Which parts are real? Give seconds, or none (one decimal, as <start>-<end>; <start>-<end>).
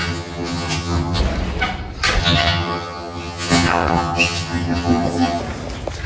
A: 1.2-2.2; 5.4-6.1